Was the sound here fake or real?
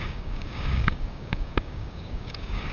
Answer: fake